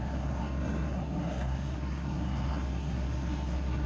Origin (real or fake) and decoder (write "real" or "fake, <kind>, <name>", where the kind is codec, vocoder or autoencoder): fake, codec, SNAC